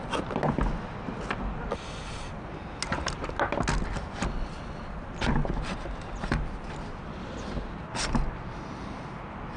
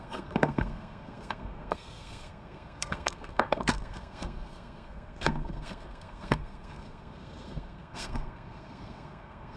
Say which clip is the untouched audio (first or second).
first